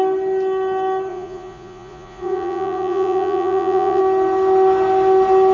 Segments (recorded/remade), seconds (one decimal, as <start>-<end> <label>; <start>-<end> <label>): 0.0-1.1 recorded; 1.1-4.0 remade; 4.0-5.5 recorded